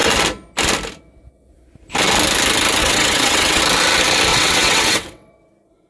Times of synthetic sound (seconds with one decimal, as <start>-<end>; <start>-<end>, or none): 2.8-3.6; 4.3-5.3